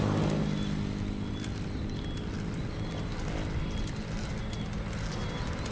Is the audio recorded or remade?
recorded